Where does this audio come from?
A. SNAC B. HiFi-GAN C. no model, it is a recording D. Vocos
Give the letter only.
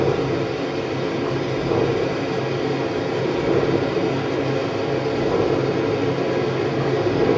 C